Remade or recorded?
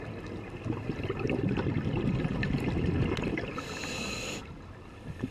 recorded